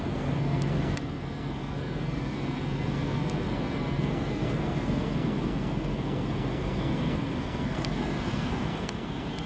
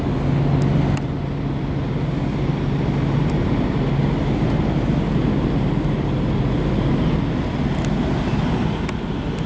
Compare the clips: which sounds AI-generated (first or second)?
first